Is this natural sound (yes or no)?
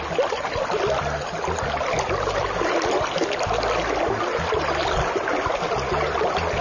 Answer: yes